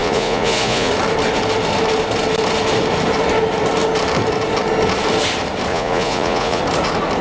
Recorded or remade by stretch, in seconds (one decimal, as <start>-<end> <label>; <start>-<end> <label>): 0.0-0.9 remade; 0.9-5.7 recorded; 5.7-6.6 remade; 6.6-7.2 recorded